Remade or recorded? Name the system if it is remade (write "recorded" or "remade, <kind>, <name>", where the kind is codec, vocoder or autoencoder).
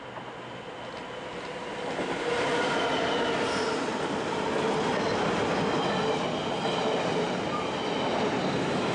recorded